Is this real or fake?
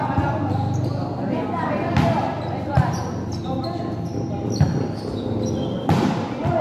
real